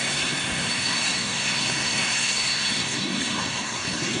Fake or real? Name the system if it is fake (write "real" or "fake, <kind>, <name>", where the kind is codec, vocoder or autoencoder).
fake, codec, SNAC